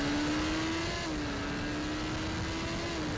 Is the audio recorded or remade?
recorded